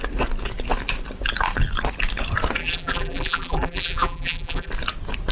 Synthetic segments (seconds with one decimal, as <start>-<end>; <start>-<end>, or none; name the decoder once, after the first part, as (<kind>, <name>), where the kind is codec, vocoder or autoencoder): 2.6-4.7 (vocoder, BigVGAN v2)